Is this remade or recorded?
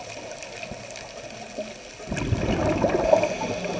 recorded